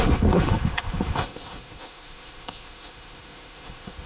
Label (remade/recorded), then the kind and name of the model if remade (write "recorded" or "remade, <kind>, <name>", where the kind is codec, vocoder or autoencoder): remade, autoencoder, DAC-VAE